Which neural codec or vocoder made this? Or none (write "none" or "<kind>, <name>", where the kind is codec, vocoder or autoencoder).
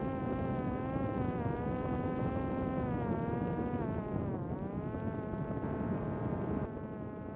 none